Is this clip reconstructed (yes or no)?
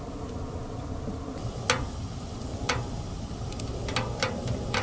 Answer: no